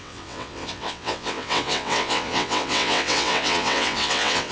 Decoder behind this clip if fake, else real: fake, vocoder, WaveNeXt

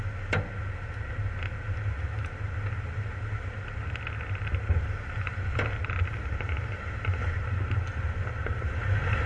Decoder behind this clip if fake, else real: real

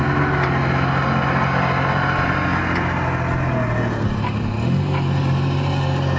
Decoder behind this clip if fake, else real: real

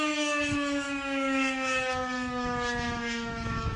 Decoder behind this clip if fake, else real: fake, autoencoder, DAC-VAE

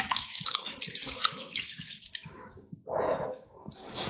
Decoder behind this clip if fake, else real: fake, autoencoder, DAC-VAE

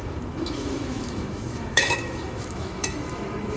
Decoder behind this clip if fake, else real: fake, autoencoder, DAC-VAE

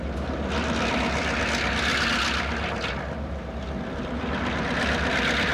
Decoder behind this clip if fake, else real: real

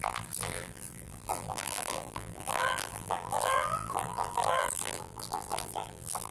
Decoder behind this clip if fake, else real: fake, vocoder, BigVGAN v2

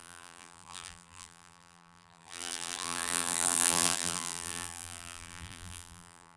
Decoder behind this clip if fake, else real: fake, vocoder, BigVGAN v2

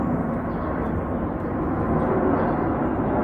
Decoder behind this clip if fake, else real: real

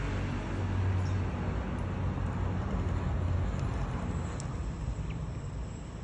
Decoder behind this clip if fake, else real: real